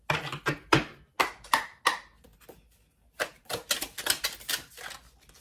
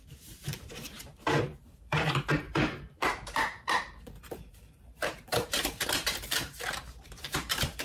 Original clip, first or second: first